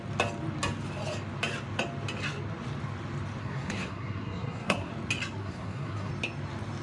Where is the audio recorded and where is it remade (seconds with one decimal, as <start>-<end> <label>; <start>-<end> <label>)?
0.0-3.4 recorded; 3.4-4.9 remade; 4.9-5.4 recorded; 5.4-6.1 remade; 6.1-6.8 recorded